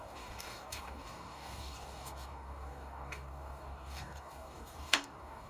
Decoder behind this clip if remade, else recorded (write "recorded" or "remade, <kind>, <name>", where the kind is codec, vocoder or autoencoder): remade, codec, DAC